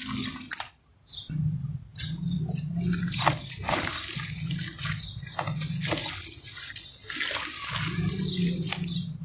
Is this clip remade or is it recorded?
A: recorded